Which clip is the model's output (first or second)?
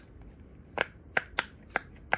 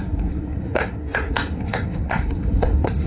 second